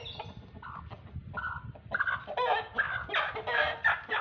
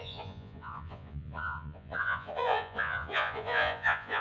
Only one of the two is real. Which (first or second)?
first